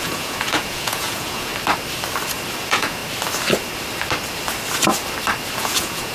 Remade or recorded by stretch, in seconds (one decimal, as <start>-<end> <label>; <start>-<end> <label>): 0.0-1.5 remade; 1.5-2.6 recorded; 2.6-3.0 remade; 3.0-5.6 recorded; 5.6-6.1 remade